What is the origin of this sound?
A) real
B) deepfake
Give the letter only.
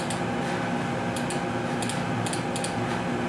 A